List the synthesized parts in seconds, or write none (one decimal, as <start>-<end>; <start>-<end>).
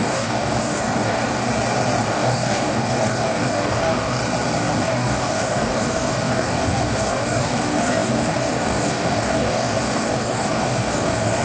0.0-1.5; 2.0-4.2; 4.8-11.4